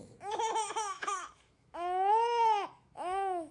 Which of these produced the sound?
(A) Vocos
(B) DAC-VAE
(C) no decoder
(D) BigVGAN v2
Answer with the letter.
B